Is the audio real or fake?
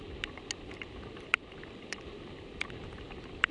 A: real